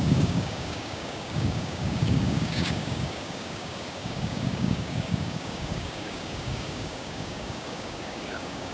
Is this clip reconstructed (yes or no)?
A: yes